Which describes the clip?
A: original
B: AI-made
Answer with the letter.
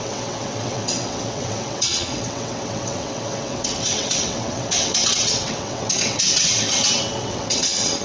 B